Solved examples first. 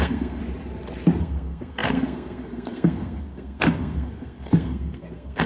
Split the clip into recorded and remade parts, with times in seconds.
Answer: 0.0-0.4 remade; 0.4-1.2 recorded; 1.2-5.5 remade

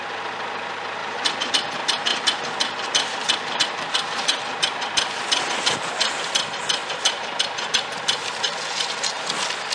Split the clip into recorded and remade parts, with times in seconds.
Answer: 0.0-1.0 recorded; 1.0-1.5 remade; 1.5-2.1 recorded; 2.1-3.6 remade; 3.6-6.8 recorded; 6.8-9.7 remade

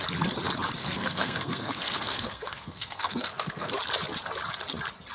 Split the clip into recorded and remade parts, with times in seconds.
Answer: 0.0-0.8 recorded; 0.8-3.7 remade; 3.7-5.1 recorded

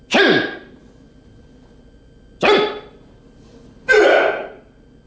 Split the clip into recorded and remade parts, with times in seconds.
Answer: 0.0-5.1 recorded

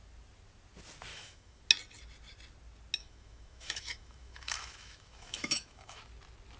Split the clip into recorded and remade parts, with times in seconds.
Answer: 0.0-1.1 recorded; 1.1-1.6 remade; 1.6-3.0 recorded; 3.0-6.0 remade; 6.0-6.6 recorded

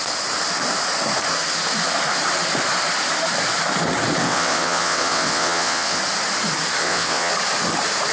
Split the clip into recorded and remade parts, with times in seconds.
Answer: 0.0-4.2 recorded; 4.2-6.0 remade; 6.0-6.8 recorded; 6.8-7.3 remade; 7.3-8.1 recorded

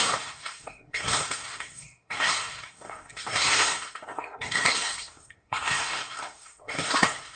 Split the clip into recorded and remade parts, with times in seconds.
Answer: 0.0-7.4 remade

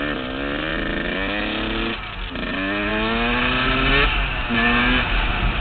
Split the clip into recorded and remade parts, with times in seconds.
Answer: 0.0-5.6 recorded